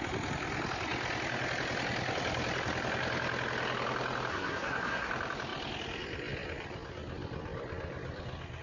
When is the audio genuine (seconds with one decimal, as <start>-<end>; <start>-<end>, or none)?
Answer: 0.0-4.3; 5.1-8.6